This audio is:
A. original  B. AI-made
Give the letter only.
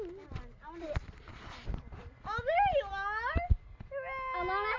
A